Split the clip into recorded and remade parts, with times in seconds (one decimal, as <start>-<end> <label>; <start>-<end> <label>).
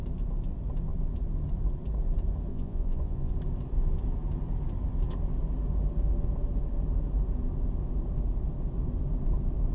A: 0.0-2.5 recorded; 2.5-3.3 remade; 3.3-9.7 recorded